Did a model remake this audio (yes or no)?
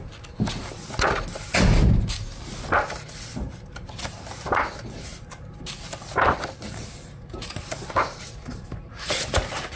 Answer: no